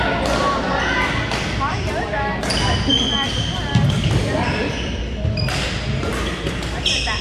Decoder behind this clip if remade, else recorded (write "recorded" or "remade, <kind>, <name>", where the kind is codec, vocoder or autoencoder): recorded